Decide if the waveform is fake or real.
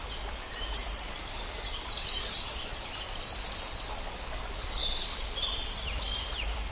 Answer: fake